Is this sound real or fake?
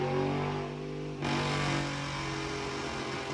real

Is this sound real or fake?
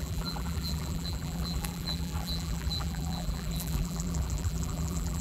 fake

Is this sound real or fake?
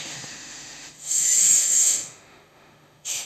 fake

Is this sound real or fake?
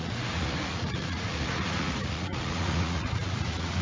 fake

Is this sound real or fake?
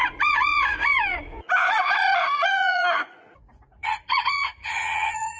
fake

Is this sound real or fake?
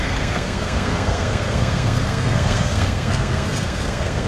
fake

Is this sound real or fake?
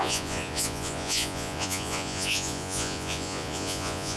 fake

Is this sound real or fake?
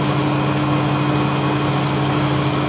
real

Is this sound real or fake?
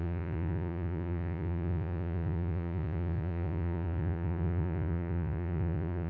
fake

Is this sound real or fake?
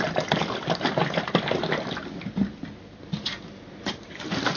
real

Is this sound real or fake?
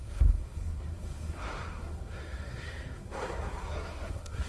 fake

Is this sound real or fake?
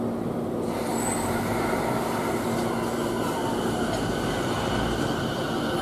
real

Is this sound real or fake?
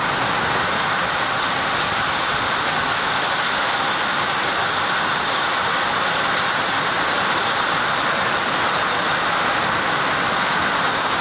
real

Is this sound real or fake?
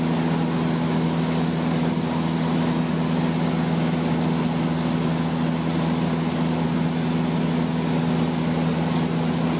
real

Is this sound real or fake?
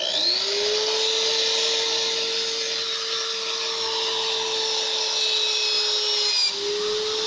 real